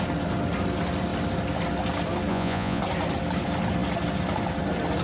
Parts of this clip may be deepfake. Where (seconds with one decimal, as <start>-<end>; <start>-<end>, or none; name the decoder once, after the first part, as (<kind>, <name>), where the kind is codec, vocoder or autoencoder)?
2.3-2.8 (vocoder, Vocos)